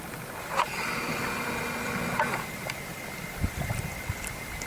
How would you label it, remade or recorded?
recorded